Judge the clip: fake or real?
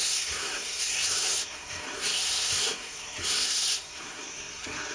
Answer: fake